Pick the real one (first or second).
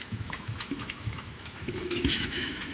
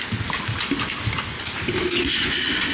second